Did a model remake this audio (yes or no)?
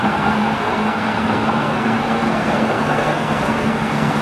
yes